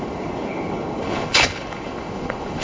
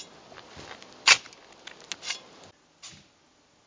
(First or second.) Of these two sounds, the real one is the second